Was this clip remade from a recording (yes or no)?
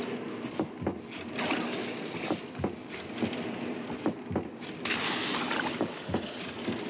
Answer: no